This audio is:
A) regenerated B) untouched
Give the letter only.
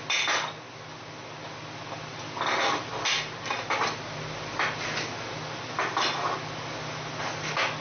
B